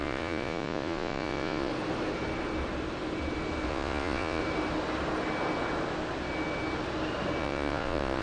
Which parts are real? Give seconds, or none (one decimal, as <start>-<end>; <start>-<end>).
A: 1.7-3.7; 4.4-7.4

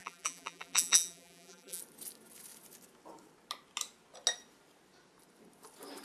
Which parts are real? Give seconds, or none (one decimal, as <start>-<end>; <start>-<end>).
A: 1.8-6.0

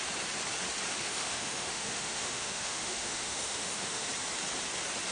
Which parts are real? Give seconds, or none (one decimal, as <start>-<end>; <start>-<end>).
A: 0.0-1.0; 4.1-5.1

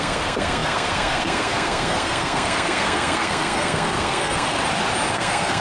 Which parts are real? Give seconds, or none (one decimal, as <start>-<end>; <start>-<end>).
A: 4.6-5.1